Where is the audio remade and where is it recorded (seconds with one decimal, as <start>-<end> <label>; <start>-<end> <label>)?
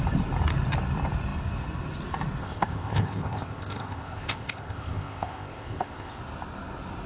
0.0-2.4 recorded; 2.4-6.2 remade; 6.2-7.1 recorded